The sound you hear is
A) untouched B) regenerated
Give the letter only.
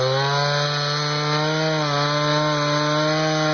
A